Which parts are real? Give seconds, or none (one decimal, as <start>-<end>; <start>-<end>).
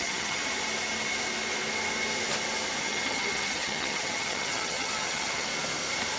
0.4-2.8; 5.5-6.2